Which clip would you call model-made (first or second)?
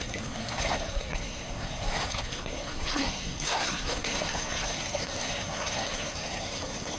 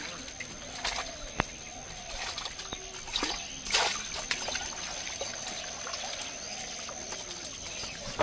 first